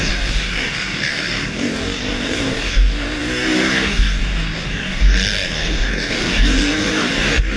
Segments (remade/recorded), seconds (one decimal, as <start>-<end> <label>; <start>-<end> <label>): 0.0-7.6 remade